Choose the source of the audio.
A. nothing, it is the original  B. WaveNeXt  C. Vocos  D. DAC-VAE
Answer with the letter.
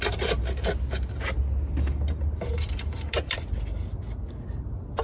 A